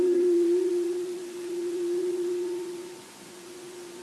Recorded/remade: remade